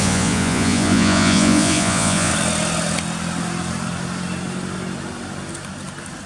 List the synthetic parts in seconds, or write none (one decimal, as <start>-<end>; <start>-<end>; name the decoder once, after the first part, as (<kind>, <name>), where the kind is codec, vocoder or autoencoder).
0.0-2.3 (vocoder, Vocos)